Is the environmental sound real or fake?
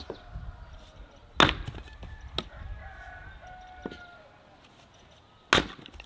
real